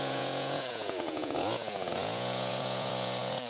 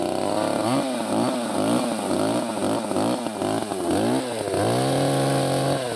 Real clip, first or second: second